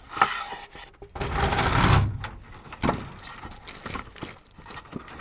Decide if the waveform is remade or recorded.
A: recorded